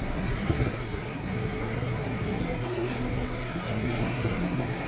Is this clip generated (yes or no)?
yes